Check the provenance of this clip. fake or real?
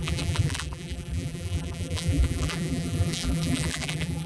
fake